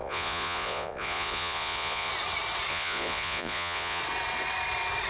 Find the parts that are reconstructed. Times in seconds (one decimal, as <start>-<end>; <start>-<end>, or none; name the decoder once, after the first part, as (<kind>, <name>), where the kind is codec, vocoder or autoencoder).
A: 0.0-2.1 (vocoder, Vocos); 2.7-4.0